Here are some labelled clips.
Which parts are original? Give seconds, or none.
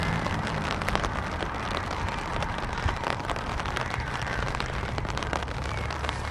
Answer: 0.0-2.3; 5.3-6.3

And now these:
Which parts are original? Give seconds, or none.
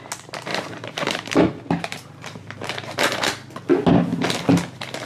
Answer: 0.0-0.5; 3.2-5.1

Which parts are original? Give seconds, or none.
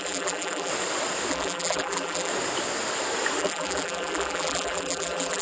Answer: 0.7-1.3; 2.3-3.4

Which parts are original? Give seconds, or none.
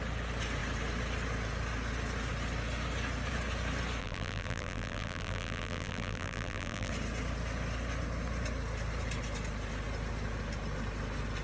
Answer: 0.0-4.0; 6.9-11.4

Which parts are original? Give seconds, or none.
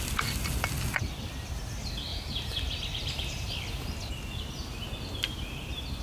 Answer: 0.0-2.1; 3.5-6.0